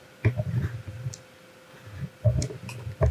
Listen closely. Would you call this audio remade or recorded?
recorded